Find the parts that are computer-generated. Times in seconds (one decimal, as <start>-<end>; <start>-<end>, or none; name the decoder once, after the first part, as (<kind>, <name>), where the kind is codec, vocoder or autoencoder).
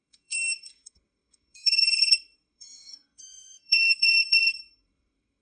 0.0-5.4 (codec, SNAC)